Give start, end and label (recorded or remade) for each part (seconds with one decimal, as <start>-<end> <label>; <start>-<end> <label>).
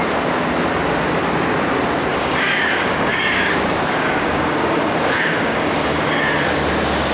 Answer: 0.0-2.1 recorded; 2.1-6.2 remade; 6.2-7.1 recorded